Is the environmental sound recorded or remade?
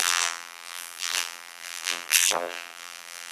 remade